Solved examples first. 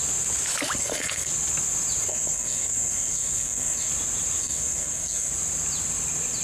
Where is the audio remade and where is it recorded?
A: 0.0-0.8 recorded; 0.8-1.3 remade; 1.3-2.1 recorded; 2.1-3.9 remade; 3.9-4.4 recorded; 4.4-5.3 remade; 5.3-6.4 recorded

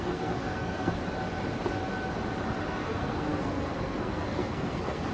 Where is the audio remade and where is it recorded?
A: 0.0-1.0 remade; 1.0-2.7 recorded; 2.7-5.1 remade

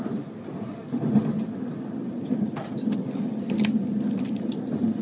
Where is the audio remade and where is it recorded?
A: 0.0-5.0 recorded